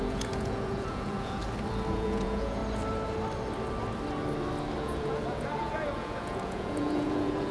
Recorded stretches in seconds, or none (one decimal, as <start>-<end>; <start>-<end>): 1.4-1.9; 2.6-4.8